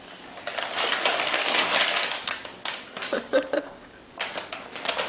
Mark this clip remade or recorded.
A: remade